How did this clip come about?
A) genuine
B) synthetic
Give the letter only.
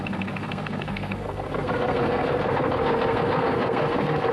B